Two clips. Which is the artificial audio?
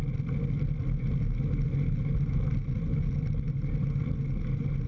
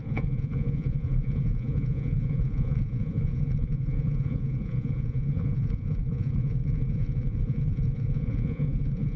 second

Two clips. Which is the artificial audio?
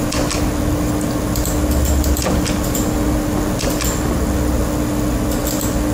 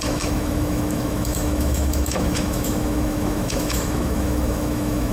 second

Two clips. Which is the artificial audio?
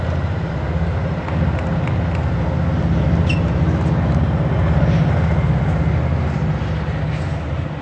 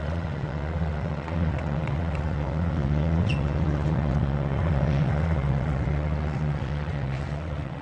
second